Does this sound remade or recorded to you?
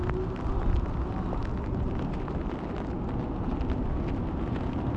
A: recorded